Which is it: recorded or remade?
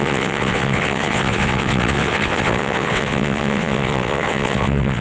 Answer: remade